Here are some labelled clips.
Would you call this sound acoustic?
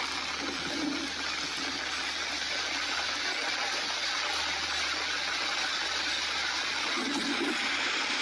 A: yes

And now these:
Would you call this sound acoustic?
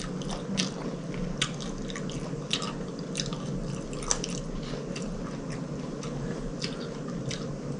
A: yes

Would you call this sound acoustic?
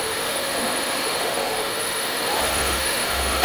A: no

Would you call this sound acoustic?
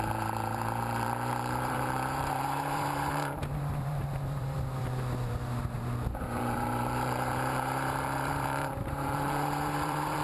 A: no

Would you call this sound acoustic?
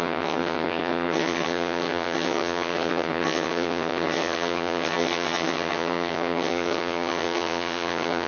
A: no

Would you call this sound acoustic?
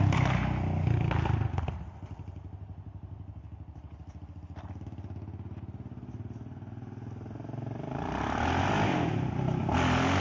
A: yes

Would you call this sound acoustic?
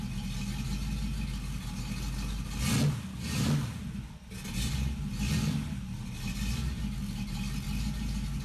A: yes